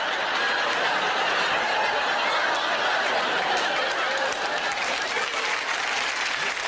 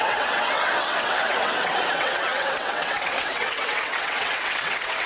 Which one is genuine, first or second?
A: first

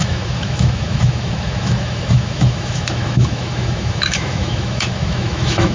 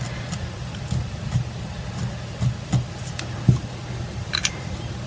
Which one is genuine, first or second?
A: second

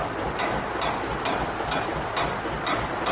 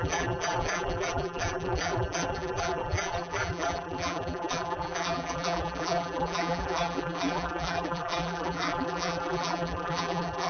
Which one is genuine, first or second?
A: first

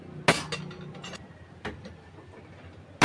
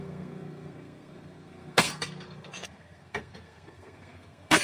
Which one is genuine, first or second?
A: first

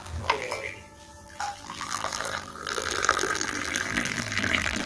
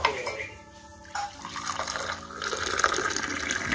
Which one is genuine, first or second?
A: second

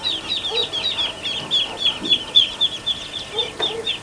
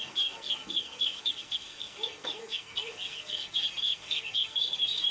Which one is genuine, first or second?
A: first